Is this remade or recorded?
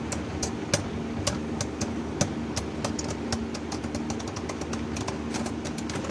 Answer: recorded